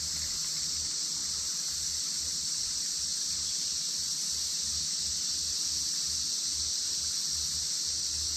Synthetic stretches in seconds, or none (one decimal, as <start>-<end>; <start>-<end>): 1.2-2.0; 3.1-3.7

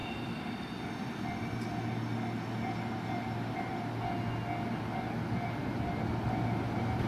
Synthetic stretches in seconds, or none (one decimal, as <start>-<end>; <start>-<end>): 0.0-0.8

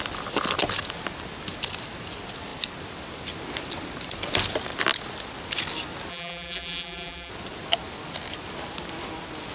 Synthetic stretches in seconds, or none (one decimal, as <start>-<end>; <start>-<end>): 6.1-7.3

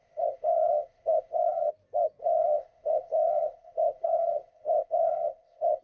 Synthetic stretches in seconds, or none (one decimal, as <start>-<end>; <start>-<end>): 0.0-1.7; 2.2-5.8

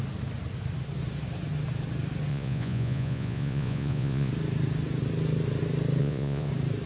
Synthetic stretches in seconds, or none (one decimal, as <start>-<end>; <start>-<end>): 2.3-4.3; 6.0-6.5

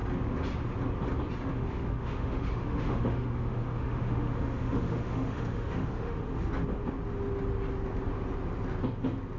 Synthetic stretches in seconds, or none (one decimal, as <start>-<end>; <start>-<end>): 1.5-6.5

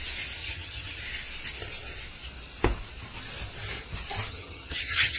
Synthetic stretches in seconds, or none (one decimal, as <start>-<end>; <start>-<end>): 0.4-1.0; 4.3-5.2

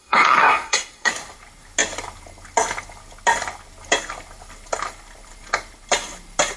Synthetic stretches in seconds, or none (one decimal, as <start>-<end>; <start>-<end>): 0.0-1.1